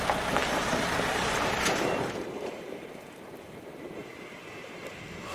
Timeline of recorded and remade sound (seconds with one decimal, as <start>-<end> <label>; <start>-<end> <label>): 0.0-4.0 remade; 4.0-5.3 recorded